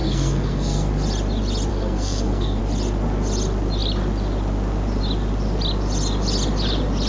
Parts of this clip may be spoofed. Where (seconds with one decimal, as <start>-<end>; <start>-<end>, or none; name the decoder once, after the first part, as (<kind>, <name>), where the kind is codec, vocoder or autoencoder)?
0.0-0.9 (codec, SNAC); 1.7-2.6